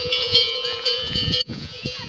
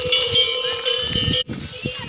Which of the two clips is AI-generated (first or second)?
first